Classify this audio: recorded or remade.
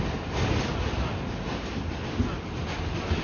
recorded